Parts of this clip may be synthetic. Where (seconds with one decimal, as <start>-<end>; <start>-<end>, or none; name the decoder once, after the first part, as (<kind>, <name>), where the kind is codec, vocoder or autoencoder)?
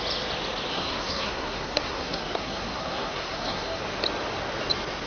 0.7-3.8 (codec, SNAC)